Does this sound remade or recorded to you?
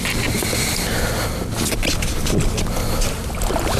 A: recorded